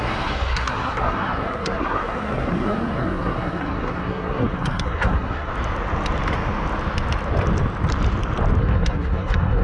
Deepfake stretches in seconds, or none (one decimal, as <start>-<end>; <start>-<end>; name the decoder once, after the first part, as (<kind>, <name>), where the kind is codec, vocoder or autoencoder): 0.0-5.5 (codec, SNAC); 8.6-9.6